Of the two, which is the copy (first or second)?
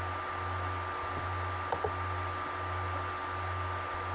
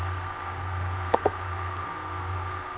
second